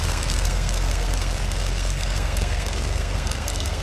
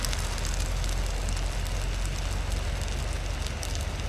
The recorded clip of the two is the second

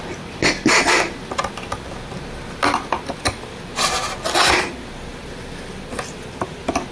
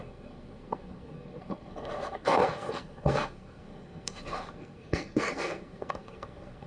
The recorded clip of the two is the first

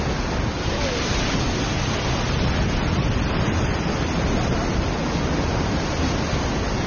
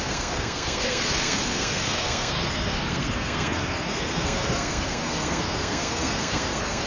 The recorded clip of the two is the first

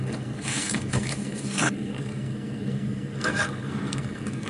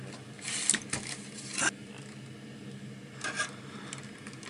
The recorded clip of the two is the second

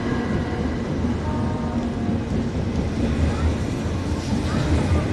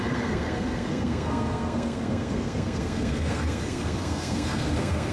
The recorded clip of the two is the first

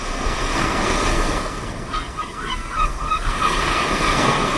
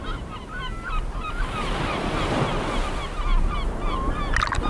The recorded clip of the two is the second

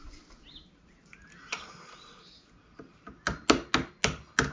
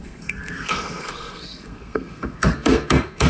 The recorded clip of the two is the first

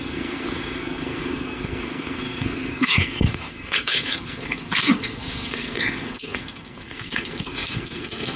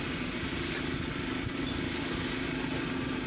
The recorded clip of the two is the second